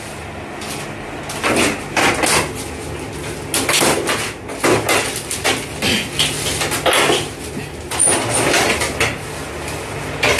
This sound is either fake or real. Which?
real